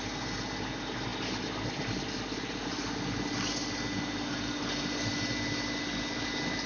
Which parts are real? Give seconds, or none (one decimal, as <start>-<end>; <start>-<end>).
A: 0.0-6.7